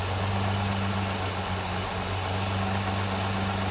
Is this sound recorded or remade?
recorded